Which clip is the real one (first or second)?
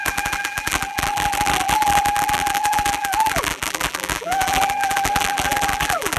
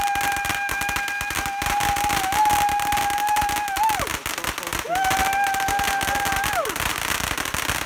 second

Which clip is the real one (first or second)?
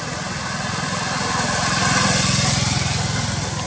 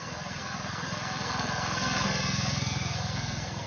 first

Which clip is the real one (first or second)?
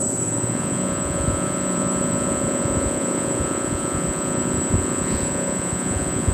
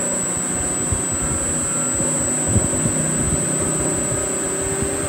second